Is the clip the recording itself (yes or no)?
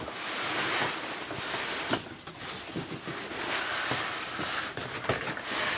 yes